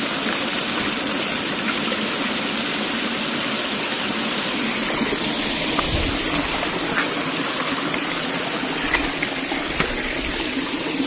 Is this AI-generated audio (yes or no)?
no